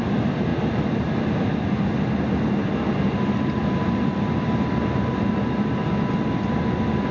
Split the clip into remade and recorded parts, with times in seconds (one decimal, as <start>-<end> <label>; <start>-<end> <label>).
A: 0.0-7.1 recorded